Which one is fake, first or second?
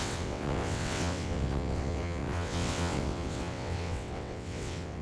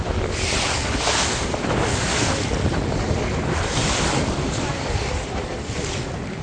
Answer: first